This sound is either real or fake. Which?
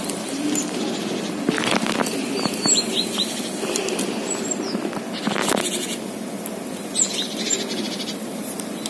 real